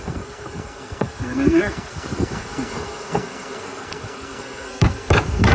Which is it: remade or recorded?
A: remade